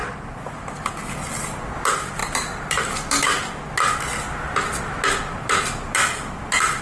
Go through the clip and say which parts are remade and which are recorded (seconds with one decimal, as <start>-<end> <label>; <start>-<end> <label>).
0.0-6.8 recorded